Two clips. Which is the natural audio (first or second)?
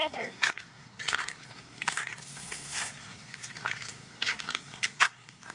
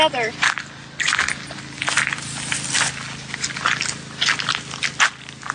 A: second